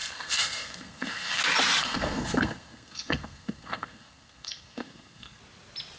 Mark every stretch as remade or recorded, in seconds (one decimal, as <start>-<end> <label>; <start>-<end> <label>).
0.0-1.4 remade; 1.4-1.8 recorded; 1.8-5.4 remade; 5.4-6.0 recorded